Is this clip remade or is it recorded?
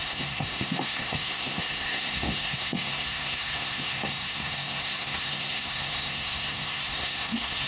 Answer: remade